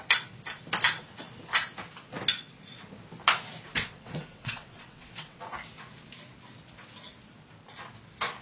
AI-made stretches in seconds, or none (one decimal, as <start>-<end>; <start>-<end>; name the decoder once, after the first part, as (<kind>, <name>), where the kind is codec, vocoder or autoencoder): 3.7-5.4 (vocoder, WaveNeXt)